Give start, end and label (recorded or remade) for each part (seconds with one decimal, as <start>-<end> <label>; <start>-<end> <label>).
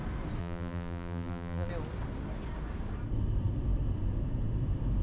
0.0-0.4 recorded; 0.4-1.7 remade; 1.7-5.0 recorded